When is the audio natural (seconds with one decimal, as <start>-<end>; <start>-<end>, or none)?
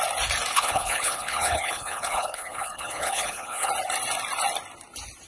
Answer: 0.0-0.5; 3.7-5.3